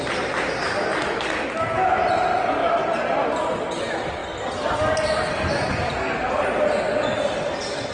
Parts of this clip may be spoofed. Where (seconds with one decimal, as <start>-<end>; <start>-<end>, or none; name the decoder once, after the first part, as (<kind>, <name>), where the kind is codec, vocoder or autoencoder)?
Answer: 0.9-1.5 (vocoder, BigVGAN v2); 2.6-3.3